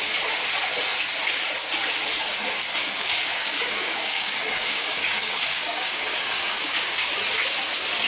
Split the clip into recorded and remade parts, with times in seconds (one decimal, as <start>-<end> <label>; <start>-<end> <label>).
0.0-2.8 recorded; 2.8-7.1 remade; 7.1-8.1 recorded